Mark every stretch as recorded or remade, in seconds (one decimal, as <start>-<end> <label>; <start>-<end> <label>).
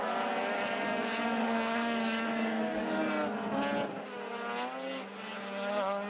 0.0-0.9 recorded; 0.9-3.0 remade; 3.0-6.1 recorded